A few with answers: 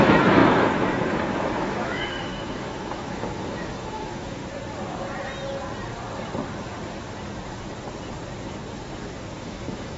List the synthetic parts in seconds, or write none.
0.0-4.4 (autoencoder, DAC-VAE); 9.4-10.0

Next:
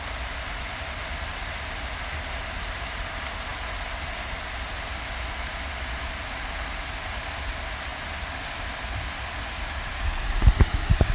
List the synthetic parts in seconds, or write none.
none

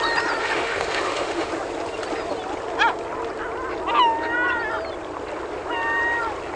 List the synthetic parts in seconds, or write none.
0.4-1.5 (autoencoder, DAC-VAE)

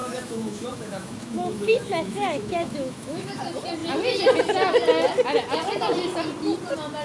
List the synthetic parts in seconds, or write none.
0.0-3.4 (autoencoder, DAC-VAE)

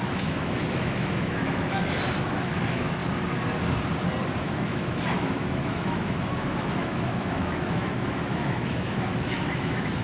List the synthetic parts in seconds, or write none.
0.0-3.0 (autoencoder, DAC-VAE); 4.4-10.0

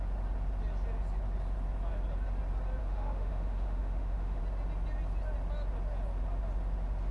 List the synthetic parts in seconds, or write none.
2.8-4.4 (autoencoder, DAC-VAE)

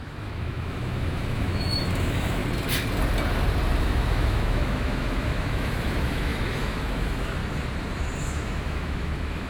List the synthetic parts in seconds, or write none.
0.0-2.4 (autoencoder, DAC-VAE); 3.8-7.4; 8.2-9.5